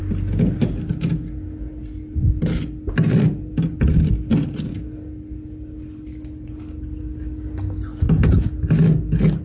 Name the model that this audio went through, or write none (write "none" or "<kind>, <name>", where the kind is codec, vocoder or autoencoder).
none